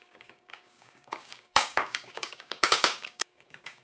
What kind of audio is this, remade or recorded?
remade